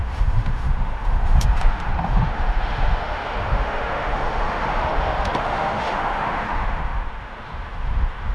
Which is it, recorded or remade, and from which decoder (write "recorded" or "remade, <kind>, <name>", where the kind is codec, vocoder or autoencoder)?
remade, autoencoder, DAC-VAE